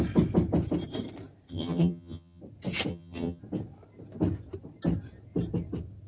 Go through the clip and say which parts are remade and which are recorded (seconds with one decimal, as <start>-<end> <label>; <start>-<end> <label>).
0.0-1.5 recorded; 1.5-2.4 remade; 2.4-2.9 recorded; 2.9-3.4 remade; 3.4-6.1 recorded